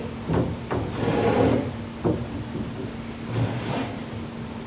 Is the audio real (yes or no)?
yes